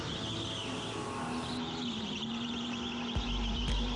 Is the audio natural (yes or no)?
yes